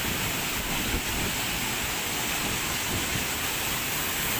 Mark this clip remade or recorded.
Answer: recorded